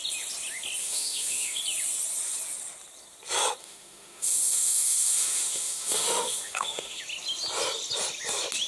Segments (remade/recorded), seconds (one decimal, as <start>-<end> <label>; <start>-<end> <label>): 0.0-0.8 recorded; 0.8-1.6 remade; 1.6-3.6 recorded; 3.6-7.0 remade; 7.0-8.7 recorded